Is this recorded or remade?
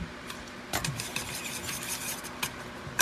remade